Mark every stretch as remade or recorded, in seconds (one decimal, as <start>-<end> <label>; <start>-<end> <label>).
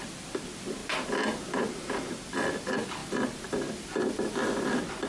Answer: 0.0-0.8 remade; 0.8-1.6 recorded; 1.6-5.1 remade